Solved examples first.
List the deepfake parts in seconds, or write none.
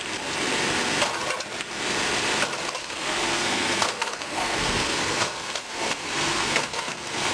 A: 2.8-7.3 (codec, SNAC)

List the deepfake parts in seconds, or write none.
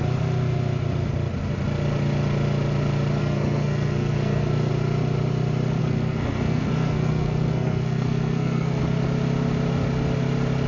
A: 3.2-4.7 (codec, SNAC); 5.8-8.8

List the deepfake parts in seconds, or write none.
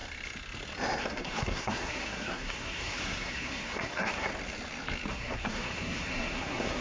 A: 1.0-4.3 (codec, SNAC); 5.1-6.8